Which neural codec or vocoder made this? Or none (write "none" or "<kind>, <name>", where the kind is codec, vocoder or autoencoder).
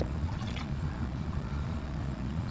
vocoder, Vocos